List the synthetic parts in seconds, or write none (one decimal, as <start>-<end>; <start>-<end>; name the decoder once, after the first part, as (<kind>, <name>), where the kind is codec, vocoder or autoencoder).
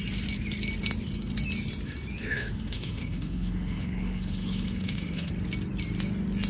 2.1-5.3 (autoencoder, DAC-VAE)